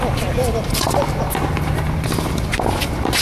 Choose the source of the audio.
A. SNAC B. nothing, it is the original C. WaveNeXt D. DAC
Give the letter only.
B